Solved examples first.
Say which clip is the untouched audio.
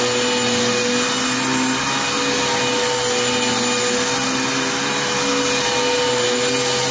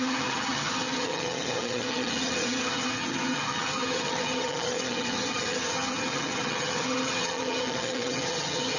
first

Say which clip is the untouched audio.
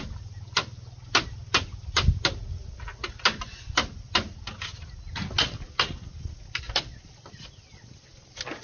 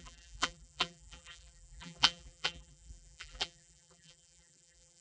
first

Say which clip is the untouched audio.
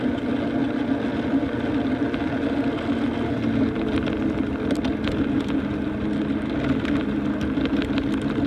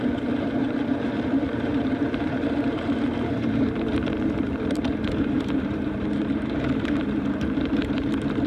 first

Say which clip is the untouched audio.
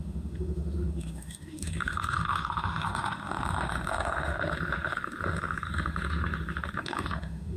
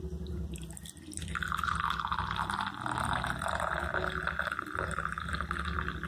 second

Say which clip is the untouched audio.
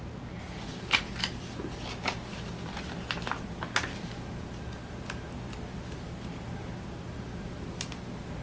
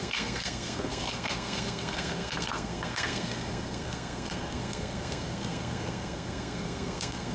first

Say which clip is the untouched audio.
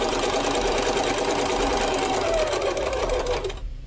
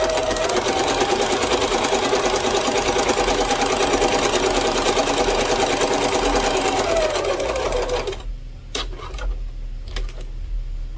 second